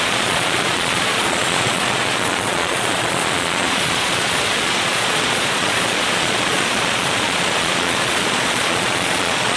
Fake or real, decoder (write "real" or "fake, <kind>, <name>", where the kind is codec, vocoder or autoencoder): fake, vocoder, Vocos